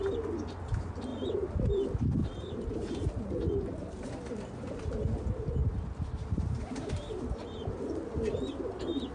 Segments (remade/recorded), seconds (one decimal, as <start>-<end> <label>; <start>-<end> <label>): 0.0-2.2 recorded; 2.2-4.1 remade; 4.1-9.1 recorded